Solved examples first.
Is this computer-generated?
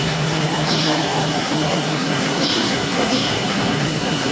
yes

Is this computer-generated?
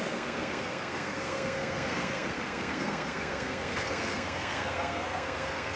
yes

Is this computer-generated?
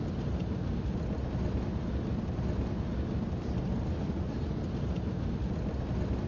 no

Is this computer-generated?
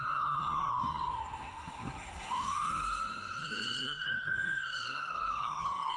yes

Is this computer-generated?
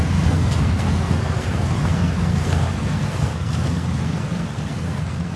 yes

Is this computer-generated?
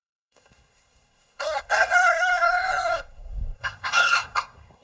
yes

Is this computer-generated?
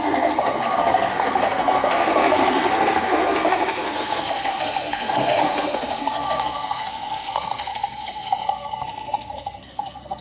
yes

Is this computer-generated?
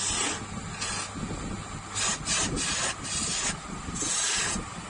no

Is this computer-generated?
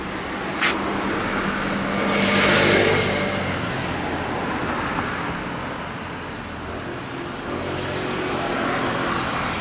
no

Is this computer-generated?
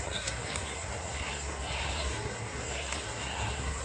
yes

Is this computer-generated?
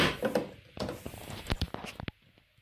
no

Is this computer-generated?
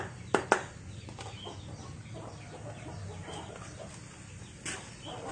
no